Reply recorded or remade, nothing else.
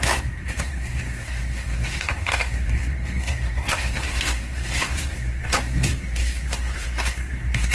remade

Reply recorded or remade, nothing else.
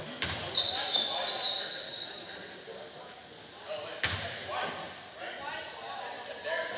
recorded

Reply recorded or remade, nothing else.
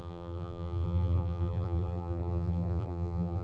remade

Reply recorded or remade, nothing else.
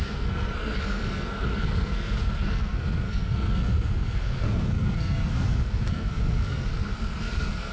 remade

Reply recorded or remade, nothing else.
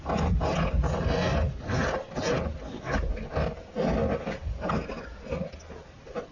recorded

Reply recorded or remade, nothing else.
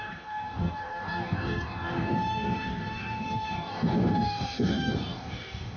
remade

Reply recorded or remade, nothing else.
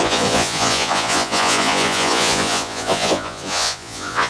remade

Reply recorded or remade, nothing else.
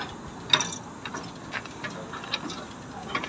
recorded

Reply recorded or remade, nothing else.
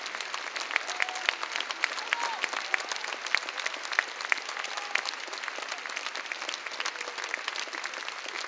recorded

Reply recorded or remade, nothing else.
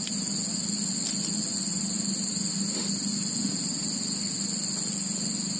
recorded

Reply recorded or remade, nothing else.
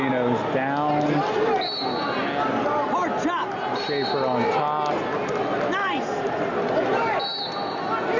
recorded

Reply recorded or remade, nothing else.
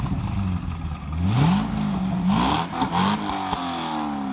recorded